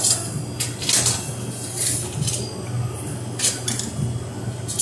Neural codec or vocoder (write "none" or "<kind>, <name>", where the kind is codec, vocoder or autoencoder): none